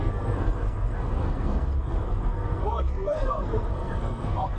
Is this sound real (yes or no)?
no